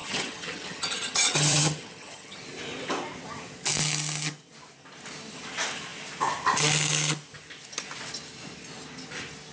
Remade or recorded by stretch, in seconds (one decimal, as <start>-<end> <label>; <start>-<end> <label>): 0.0-2.4 remade; 2.4-9.5 recorded